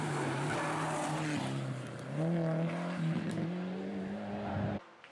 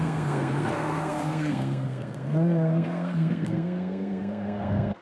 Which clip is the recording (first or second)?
first